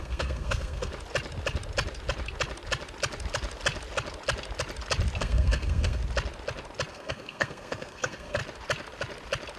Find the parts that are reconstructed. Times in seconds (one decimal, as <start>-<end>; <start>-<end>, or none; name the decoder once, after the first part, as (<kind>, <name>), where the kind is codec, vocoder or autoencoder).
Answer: 0.0-0.9 (codec, SNAC); 5.2-6.0; 6.9-8.4